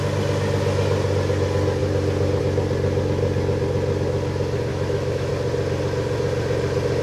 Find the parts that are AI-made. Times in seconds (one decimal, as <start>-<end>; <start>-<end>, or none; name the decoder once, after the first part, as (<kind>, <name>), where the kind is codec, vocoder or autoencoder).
4.7-5.3 (autoencoder, DAC-VAE)